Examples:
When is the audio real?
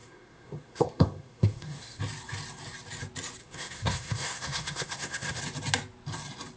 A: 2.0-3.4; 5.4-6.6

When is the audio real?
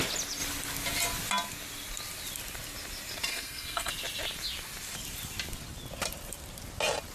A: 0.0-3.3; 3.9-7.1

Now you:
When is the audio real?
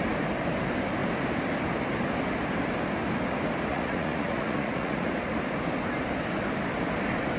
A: 0.0-3.7; 5.1-7.4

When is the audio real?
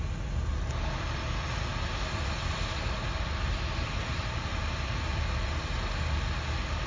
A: 0.0-6.9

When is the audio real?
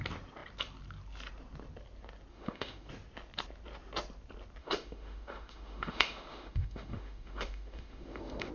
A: 0.0-2.3; 2.9-4.6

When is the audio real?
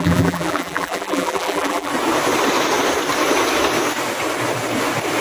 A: 1.9-5.2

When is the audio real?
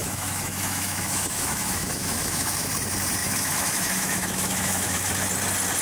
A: 2.7-3.2; 5.1-5.8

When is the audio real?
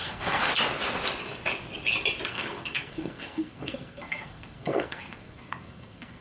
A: 0.5-2.3